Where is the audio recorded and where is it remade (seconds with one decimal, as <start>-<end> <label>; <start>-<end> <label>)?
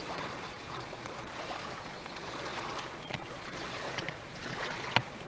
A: 0.0-5.3 remade